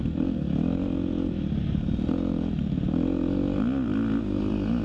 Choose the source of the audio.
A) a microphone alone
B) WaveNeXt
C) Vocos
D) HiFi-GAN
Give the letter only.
A